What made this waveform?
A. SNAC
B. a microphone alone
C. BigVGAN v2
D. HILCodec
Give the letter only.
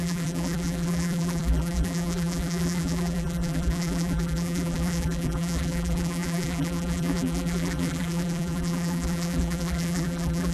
C